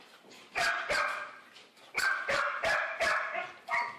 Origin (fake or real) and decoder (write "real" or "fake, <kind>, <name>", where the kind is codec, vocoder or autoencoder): fake, vocoder, BigVGAN v2